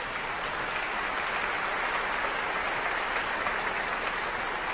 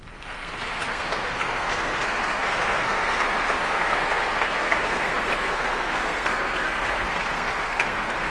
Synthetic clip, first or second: second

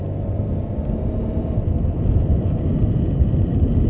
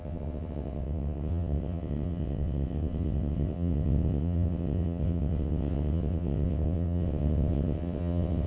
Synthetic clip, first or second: second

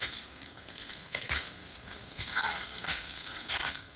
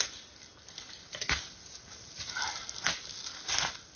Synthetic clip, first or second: first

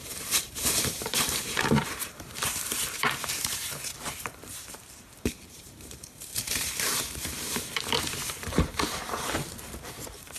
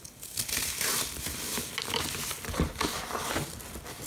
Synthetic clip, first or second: first